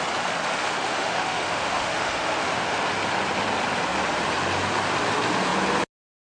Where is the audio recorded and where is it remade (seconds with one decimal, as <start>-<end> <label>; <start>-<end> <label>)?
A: 0.0-0.6 recorded; 0.6-2.8 remade; 2.8-6.3 recorded